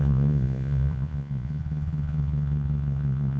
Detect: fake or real fake